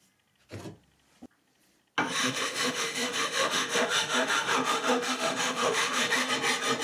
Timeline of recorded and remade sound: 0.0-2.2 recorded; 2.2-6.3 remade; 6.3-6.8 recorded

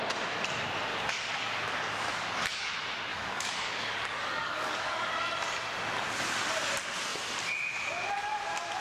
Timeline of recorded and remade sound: 0.0-0.9 recorded; 0.9-2.7 remade; 2.7-3.1 recorded; 3.1-5.1 remade; 5.1-8.8 recorded

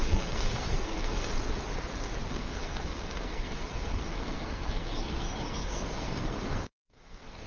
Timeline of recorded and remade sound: 0.0-1.3 remade; 1.3-2.3 recorded; 2.3-7.5 remade

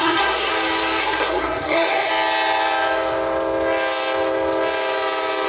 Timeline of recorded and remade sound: 0.0-0.5 remade; 0.5-1.0 recorded; 1.0-2.1 remade; 2.1-5.5 recorded